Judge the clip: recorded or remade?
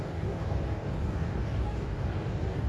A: remade